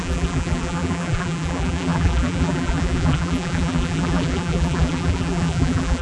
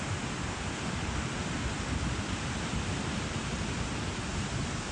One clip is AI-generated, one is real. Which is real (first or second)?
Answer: second